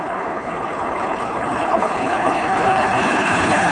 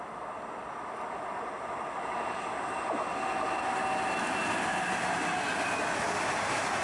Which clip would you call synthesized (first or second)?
first